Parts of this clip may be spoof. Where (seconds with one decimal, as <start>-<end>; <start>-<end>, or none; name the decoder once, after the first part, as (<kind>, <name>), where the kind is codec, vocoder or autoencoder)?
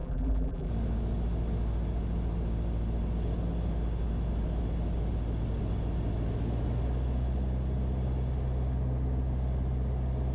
0.0-0.7 (vocoder, BigVGAN v2)